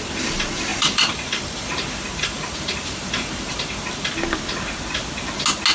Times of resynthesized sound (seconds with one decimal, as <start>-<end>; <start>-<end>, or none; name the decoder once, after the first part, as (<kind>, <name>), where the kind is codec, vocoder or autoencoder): 0.7-4.1 (vocoder, BigVGAN v2)